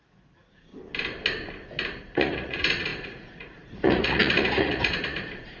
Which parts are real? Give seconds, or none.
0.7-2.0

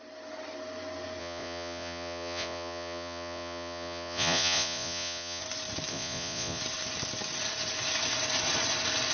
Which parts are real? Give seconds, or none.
0.0-1.2; 5.4-5.9; 6.6-9.1